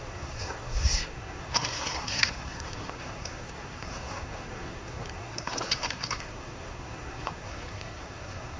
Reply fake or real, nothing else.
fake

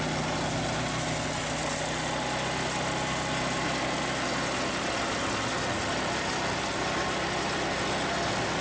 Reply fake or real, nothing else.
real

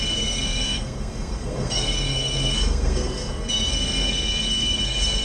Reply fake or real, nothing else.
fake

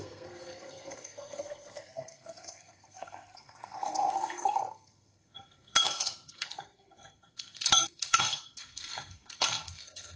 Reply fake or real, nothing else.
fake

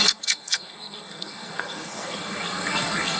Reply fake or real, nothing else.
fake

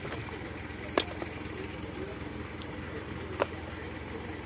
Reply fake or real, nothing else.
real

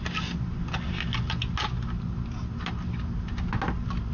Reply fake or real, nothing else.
real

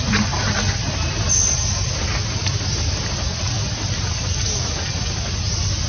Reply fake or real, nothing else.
real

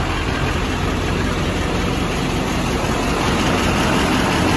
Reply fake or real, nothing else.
real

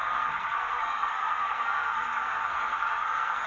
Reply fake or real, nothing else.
fake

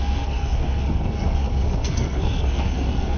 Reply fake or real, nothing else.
fake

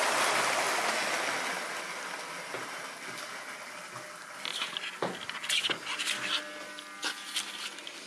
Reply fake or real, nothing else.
real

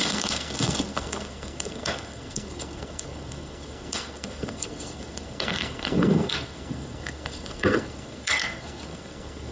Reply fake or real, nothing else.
fake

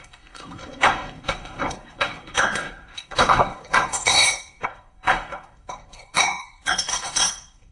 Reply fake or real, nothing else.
fake